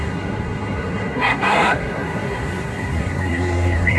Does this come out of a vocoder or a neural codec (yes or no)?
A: yes